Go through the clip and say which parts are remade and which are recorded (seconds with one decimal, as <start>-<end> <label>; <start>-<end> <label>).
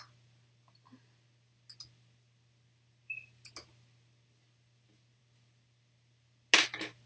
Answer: 0.0-7.1 recorded